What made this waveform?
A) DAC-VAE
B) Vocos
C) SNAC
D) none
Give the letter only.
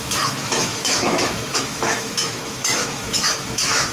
A